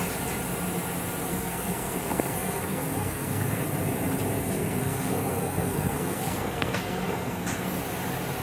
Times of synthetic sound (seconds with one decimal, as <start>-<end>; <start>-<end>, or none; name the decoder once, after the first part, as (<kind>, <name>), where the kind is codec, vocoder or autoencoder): 1.3-3.6 (codec, SNAC); 4.4-7.8